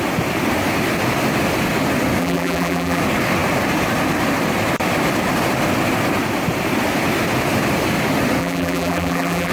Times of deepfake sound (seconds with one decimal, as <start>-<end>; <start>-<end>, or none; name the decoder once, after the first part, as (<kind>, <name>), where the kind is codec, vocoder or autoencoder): 2.2-3.0 (vocoder, BigVGAN v2); 8.4-9.5